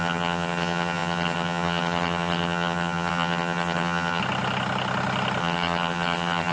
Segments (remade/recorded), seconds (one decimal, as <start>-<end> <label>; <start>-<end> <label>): 0.0-4.2 remade; 4.2-5.4 recorded; 5.4-6.5 remade